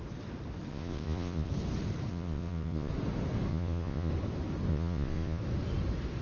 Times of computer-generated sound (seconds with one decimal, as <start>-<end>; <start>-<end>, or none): 0.7-1.5; 2.1-2.9; 3.5-4.1; 4.7-5.4